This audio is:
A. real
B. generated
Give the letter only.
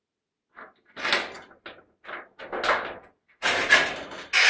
A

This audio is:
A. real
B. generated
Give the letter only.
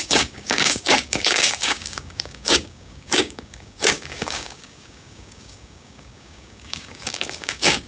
B